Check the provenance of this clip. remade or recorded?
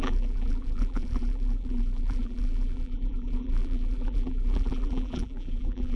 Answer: remade